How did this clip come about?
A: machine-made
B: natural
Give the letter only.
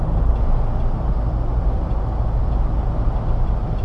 B